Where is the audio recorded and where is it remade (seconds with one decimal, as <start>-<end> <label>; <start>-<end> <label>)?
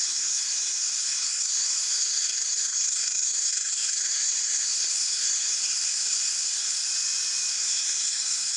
0.0-6.9 remade; 6.9-7.5 recorded; 7.5-8.6 remade